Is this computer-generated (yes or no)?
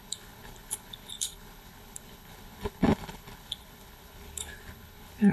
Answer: yes